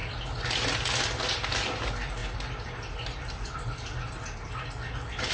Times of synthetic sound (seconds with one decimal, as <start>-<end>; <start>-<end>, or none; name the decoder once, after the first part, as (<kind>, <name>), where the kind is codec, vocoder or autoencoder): none